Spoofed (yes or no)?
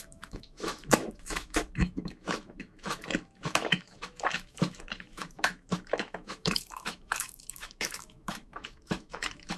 yes